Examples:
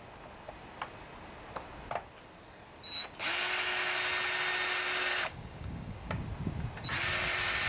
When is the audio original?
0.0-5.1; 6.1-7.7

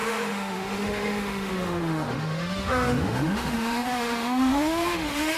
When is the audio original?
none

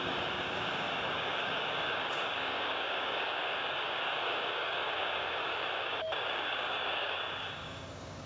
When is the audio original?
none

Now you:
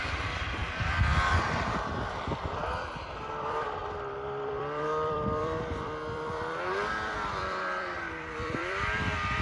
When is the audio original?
none

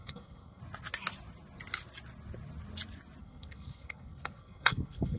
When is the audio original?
0.6-3.2

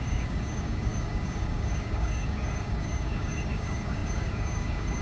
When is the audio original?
none